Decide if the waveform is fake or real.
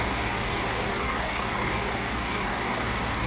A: fake